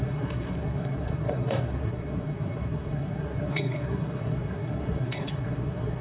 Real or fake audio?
fake